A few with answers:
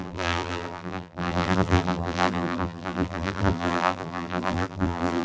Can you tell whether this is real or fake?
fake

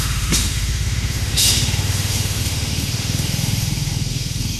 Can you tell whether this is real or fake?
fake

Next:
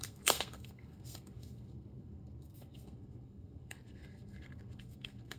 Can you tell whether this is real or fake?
fake